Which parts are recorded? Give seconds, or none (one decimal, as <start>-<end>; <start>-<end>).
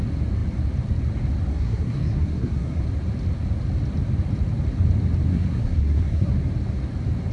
0.0-1.5; 2.8-5.3; 6.3-7.3